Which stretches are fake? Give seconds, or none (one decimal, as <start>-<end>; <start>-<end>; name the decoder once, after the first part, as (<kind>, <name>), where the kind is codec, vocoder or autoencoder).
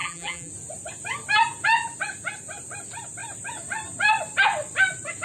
0.0-0.5 (vocoder, BigVGAN v2)